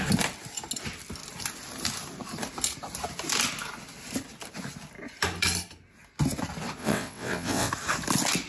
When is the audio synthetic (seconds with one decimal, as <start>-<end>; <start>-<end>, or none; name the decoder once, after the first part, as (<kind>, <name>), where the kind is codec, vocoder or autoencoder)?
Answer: 6.8-7.7 (vocoder, WaveNeXt)